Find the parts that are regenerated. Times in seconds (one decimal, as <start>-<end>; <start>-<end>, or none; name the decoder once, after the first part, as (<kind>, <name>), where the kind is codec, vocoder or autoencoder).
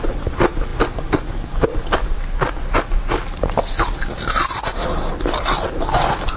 none